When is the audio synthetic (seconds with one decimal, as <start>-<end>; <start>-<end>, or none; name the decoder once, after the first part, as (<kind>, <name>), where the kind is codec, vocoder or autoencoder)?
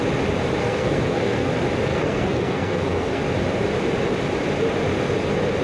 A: 0.6-1.5 (codec, SNAC); 1.9-3.2